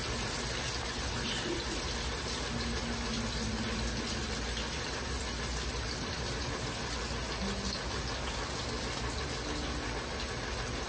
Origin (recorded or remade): recorded